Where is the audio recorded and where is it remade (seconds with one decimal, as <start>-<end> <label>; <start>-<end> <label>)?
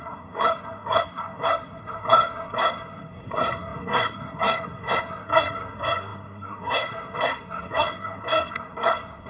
0.0-9.3 remade